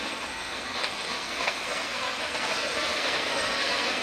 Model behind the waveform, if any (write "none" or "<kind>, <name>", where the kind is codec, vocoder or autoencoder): codec, SNAC